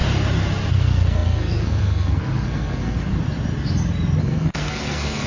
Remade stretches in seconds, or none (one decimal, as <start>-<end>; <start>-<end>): 0.7-3.1; 4.2-5.3